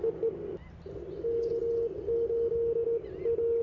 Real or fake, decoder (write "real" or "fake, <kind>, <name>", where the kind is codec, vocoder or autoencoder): real